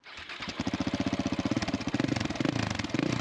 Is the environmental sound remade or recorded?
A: recorded